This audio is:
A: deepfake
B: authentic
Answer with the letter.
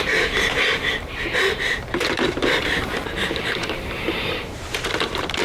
A